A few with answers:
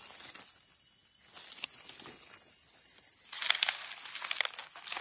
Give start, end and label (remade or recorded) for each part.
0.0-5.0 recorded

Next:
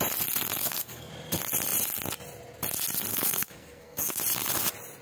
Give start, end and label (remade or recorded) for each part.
0.0-0.6 recorded; 0.6-1.1 remade; 1.1-3.1 recorded; 3.1-4.2 remade; 4.2-5.0 recorded

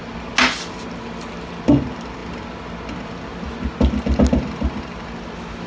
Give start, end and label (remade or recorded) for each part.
0.0-5.7 recorded

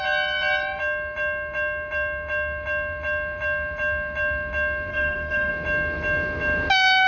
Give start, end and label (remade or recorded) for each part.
0.0-4.9 recorded; 4.9-5.5 remade; 5.5-7.1 recorded

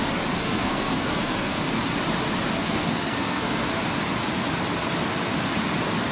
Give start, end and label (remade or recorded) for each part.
0.0-0.4 recorded; 0.4-1.8 remade; 1.8-2.6 recorded; 2.6-3.7 remade; 3.7-6.1 recorded

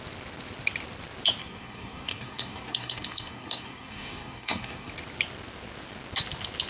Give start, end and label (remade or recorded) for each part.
0.0-1.4 recorded; 1.4-4.9 remade; 4.9-6.7 recorded